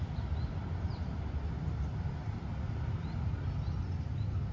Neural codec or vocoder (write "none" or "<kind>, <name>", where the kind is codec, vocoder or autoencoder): none